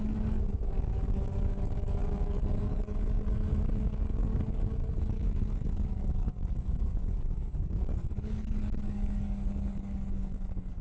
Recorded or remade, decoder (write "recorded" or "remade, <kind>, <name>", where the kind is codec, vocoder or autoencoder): remade, codec, DAC